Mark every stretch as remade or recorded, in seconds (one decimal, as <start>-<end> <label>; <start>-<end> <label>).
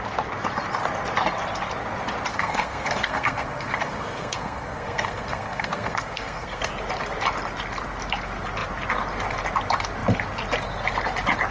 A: 0.0-2.3 recorded; 2.3-6.7 remade; 6.7-11.5 recorded